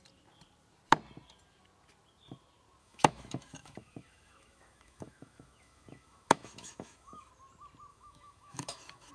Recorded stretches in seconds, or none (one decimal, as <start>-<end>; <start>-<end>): 0.0-2.8; 7.3-7.9